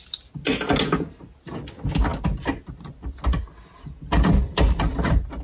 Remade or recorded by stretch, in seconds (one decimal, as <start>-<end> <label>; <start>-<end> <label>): 0.0-5.4 recorded